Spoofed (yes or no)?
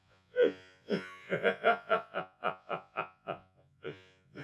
yes